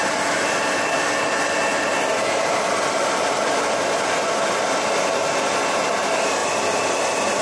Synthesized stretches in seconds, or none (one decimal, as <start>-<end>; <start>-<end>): 1.9-5.9